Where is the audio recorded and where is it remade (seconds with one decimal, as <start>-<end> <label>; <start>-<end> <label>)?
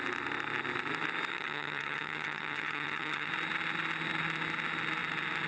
0.0-1.3 recorded; 1.3-3.3 remade; 3.3-5.5 recorded